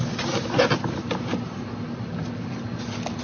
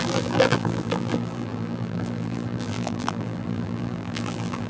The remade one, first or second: second